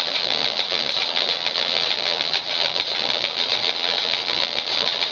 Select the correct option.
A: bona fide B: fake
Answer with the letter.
B